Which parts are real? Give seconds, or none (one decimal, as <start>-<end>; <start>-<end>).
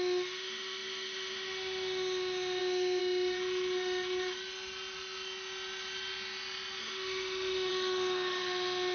3.0-6.8